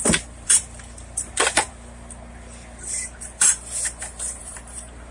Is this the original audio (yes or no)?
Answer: no